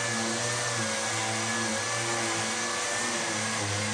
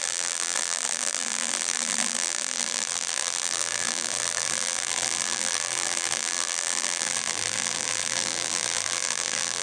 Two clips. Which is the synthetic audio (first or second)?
second